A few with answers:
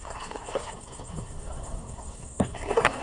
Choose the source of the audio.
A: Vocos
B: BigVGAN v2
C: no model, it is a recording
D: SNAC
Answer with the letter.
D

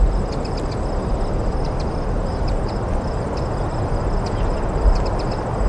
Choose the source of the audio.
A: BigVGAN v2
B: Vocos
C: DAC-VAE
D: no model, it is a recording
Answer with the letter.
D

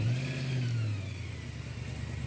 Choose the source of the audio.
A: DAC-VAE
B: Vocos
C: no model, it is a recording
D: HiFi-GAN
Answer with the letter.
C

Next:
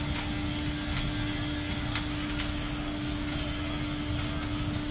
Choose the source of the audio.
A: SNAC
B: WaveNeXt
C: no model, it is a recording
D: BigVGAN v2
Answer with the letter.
C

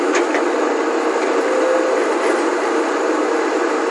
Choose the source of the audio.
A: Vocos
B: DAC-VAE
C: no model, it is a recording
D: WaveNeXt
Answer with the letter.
C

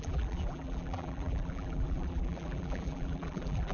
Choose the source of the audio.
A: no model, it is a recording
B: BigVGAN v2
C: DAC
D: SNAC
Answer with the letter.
B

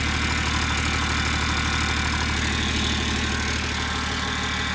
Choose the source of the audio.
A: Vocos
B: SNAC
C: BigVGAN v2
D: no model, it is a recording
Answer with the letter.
D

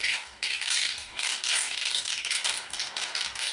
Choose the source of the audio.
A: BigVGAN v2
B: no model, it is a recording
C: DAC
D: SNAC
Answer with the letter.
C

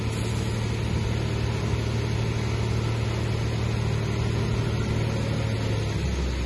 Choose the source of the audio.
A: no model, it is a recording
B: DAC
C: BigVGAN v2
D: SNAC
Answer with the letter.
A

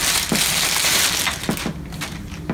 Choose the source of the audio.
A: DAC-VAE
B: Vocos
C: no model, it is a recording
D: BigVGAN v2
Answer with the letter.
C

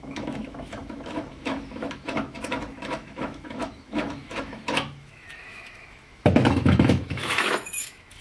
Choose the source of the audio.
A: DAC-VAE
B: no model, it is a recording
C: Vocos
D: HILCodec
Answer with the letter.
A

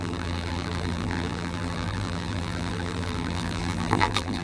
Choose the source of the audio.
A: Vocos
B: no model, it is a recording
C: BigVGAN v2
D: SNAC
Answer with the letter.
C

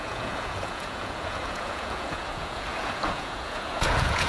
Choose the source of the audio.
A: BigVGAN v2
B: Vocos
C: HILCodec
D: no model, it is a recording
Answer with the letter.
B